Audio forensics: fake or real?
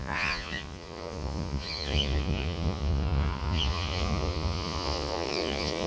fake